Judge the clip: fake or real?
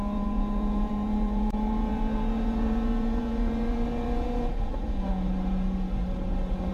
fake